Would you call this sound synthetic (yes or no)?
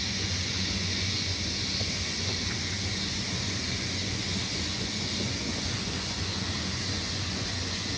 yes